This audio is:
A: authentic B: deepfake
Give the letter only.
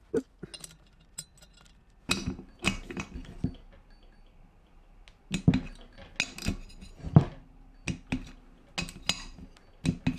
A